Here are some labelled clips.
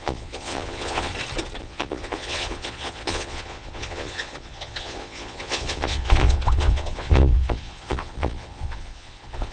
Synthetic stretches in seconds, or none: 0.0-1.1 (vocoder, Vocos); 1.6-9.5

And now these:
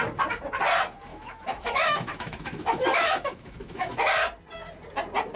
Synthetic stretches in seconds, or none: 1.1-4.1 (autoencoder, DAC-VAE)

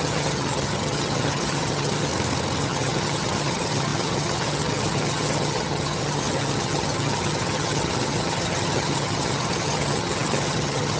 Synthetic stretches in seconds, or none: 0.0-2.1 (vocoder, HiFi-GAN); 2.6-11.0

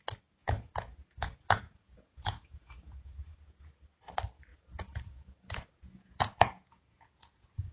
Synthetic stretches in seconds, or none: 0.4-3.8 (vocoder, Vocos); 4.5-7.7

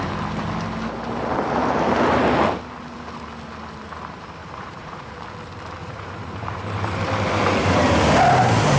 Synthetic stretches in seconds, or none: 4.4-5.1 (vocoder, Vocos); 5.8-6.6